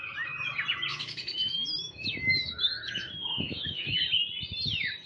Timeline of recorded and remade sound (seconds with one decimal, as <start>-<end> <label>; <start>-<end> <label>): 0.0-0.9 recorded; 0.9-4.0 remade; 4.0-5.1 recorded